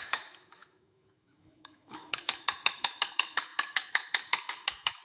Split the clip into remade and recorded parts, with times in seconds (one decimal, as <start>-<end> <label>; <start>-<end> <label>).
0.0-5.0 remade